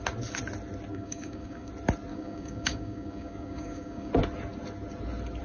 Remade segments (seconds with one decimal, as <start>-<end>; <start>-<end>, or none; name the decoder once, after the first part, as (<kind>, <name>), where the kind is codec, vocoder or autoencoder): 0.9-1.7 (codec, DAC); 2.1-4.1